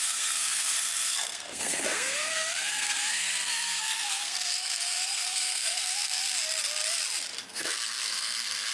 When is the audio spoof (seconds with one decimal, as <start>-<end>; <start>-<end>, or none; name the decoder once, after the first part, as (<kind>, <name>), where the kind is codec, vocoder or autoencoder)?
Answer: 0.0-6.2 (codec, SNAC); 7.5-8.7